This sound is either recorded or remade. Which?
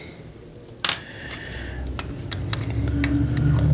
recorded